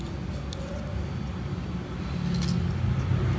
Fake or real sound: real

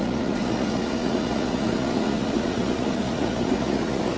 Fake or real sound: fake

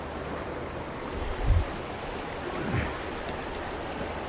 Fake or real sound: real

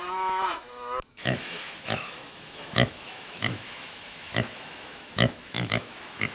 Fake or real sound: fake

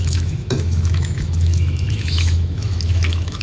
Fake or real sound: fake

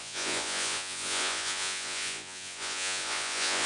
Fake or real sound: fake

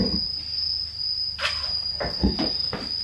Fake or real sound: real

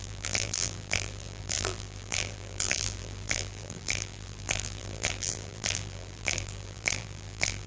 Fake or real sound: fake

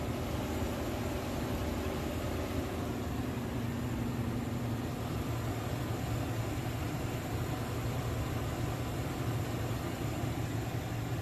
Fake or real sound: real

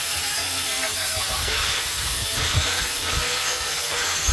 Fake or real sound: fake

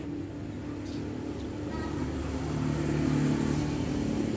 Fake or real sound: real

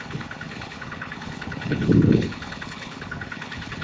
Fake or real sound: fake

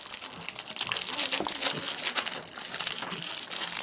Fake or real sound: real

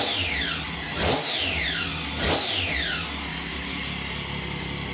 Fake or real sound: real